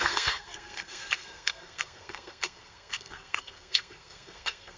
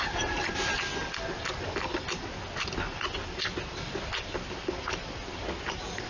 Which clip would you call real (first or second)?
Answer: second